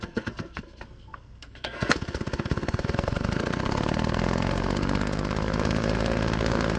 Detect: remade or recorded remade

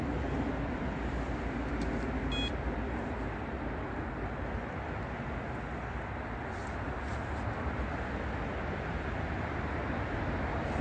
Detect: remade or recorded recorded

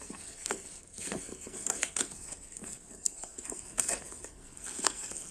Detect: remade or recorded remade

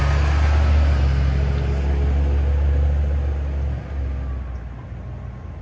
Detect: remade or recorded recorded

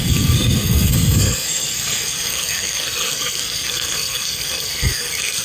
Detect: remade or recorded remade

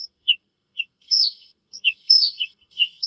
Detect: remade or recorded remade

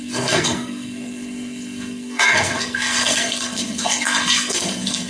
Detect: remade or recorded remade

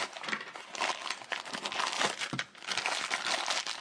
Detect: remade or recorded recorded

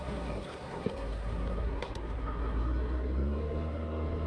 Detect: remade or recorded remade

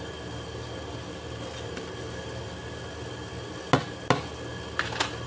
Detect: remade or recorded recorded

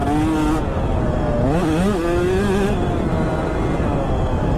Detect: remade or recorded recorded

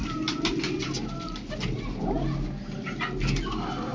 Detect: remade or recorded recorded